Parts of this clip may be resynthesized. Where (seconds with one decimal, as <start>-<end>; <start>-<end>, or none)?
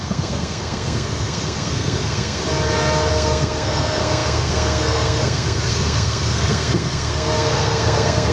0.0-2.4; 3.1-8.3